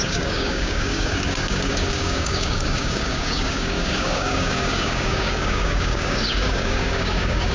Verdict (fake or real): fake